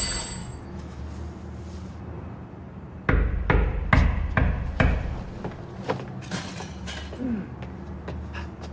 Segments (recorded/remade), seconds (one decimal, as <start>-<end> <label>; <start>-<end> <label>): 0.0-0.4 recorded; 0.4-1.0 remade; 1.0-8.7 recorded